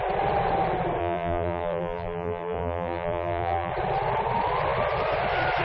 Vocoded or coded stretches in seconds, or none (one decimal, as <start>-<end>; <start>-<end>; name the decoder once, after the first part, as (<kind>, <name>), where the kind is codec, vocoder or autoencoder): 1.0-3.7 (vocoder, BigVGAN v2)